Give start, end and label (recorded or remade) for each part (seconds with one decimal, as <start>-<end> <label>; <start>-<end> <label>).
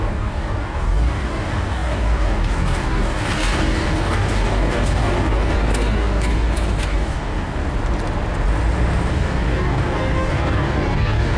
0.0-7.6 remade; 7.6-9.1 recorded; 9.1-11.4 remade